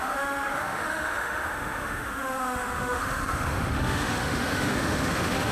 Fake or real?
fake